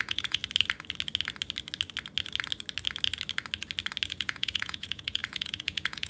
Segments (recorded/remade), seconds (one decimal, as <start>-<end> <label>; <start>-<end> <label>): 0.0-0.4 remade; 0.4-4.1 recorded; 4.1-6.1 remade